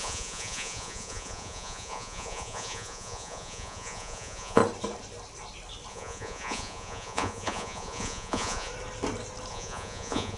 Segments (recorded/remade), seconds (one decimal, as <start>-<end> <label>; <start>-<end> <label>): 0.0-4.6 remade; 4.6-5.9 recorded; 5.9-8.7 remade; 8.7-9.5 recorded; 9.5-10.4 remade